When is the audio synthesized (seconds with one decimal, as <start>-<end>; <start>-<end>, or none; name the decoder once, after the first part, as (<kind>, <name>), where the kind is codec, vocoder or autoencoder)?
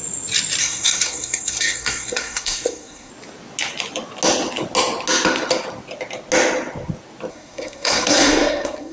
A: 0.6-3.1 (codec, SNAC); 7.3-8.9